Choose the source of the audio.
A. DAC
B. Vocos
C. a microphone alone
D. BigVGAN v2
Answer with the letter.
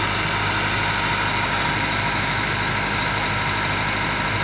C